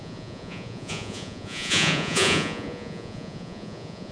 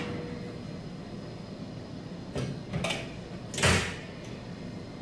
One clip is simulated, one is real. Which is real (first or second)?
second